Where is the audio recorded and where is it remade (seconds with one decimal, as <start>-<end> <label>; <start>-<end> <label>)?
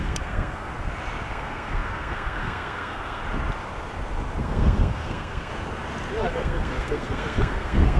0.0-0.7 remade; 0.7-1.3 recorded; 1.3-3.2 remade; 3.2-4.4 recorded; 4.4-5.5 remade; 5.5-6.2 recorded; 6.2-8.0 remade